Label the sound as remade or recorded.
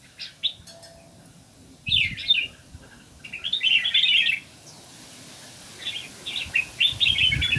recorded